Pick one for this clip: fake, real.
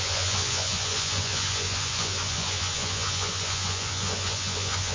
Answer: fake